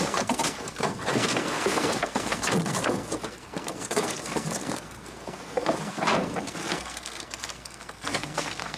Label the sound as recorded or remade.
remade